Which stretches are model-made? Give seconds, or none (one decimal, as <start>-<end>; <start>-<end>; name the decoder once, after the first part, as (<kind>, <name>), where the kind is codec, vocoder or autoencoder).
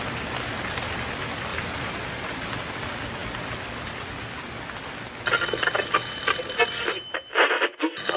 1.5-2.5 (vocoder, BigVGAN v2)